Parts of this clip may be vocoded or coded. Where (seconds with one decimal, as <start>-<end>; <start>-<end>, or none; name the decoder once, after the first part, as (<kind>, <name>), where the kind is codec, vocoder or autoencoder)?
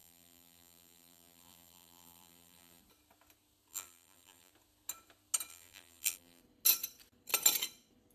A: 0.0-2.8 (vocoder, BigVGAN v2); 3.7-4.5; 5.5-6.4